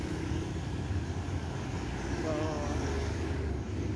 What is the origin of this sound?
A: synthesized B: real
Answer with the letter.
A